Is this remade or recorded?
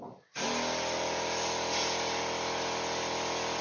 recorded